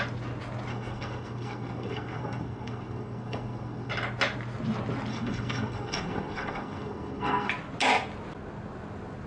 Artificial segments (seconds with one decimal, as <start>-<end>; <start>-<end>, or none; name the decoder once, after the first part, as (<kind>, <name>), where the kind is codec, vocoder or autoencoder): 0.7-3.9 (codec, SNAC); 5.1-7.5